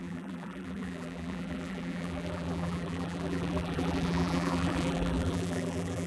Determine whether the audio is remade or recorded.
remade